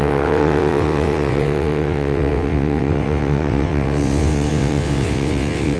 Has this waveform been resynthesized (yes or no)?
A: yes